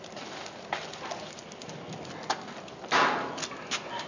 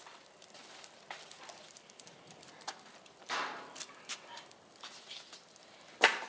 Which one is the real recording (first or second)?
first